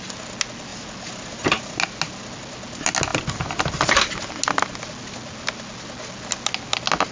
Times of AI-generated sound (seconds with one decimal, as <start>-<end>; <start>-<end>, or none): none